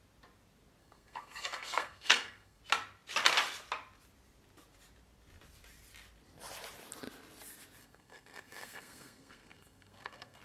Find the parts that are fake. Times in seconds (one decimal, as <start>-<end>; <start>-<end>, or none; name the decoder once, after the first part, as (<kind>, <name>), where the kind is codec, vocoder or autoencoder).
0.8-2.6 (codec, SNAC); 7.8-10.4